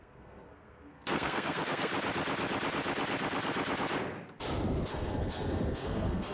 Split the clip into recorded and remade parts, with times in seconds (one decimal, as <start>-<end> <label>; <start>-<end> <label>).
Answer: 0.0-1.9 remade; 1.9-4.9 recorded; 4.9-6.3 remade